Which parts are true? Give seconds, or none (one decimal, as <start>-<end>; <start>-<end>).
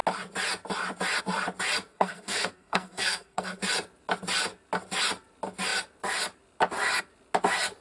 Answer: 0.0-1.9; 3.6-7.8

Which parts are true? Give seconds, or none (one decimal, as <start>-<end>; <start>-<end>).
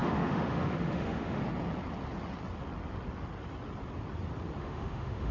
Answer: 1.4-4.6